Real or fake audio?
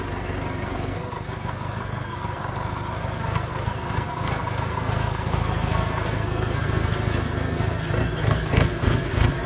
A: fake